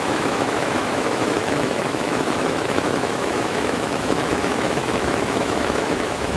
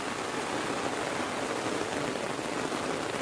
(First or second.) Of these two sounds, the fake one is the first